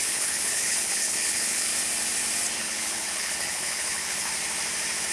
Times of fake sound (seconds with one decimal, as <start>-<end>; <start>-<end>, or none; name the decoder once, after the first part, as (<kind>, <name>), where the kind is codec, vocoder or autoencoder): 0.0-1.7 (codec, HILCodec); 2.6-4.3